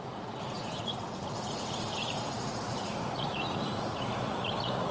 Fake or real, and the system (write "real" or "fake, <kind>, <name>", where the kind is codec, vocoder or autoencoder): fake, vocoder, Vocos